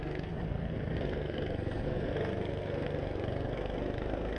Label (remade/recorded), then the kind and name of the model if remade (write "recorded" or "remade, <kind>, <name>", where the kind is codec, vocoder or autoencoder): remade, codec, SNAC